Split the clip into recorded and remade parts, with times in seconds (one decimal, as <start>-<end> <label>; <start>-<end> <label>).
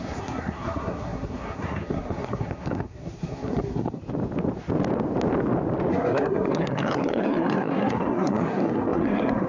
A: 0.0-4.0 remade; 4.0-5.9 recorded; 5.9-9.5 remade